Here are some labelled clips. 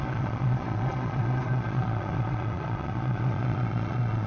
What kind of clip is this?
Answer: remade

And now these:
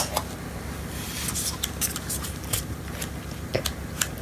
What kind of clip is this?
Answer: recorded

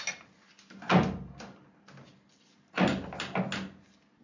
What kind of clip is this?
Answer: recorded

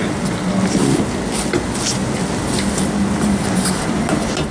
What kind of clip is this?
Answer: recorded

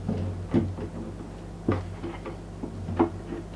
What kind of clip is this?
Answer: recorded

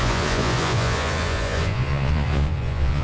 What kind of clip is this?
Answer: remade